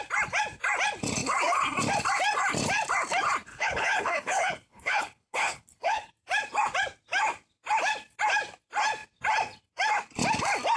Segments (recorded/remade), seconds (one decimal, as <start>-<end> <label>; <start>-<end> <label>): 0.0-3.5 recorded; 3.5-6.1 remade; 6.1-10.8 recorded

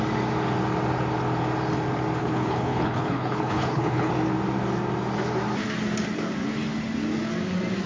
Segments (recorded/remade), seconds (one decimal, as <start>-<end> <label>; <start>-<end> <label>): 0.0-2.2 recorded; 2.2-4.1 remade; 4.1-7.9 recorded

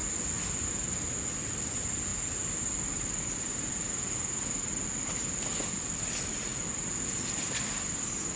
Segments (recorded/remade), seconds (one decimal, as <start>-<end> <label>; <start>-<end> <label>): 0.0-8.4 recorded